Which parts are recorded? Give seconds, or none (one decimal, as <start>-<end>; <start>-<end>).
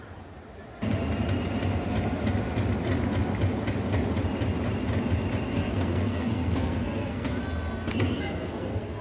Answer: 0.0-5.5; 7.4-7.9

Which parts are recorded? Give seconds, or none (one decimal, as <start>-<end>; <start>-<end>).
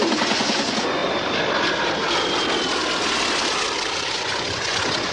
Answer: 1.0-4.1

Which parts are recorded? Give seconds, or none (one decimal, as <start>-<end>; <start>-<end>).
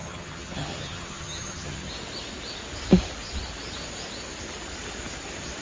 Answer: 1.9-5.6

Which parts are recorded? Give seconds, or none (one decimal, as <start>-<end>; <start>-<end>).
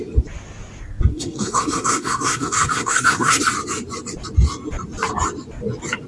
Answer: 0.0-1.1; 3.4-6.1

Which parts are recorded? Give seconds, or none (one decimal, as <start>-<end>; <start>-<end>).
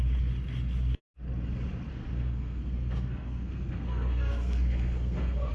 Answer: 0.0-1.9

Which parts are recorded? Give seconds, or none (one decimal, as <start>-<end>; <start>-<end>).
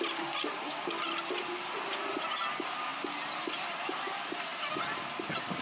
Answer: 0.0-5.6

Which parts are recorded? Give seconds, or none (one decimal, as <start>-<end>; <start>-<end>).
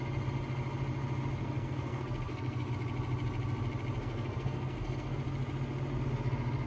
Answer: 0.0-1.4; 2.7-4.0; 5.2-6.7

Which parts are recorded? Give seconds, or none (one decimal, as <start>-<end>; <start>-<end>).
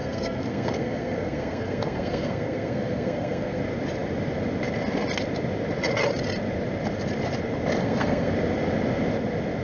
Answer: 3.6-7.8; 8.3-9.6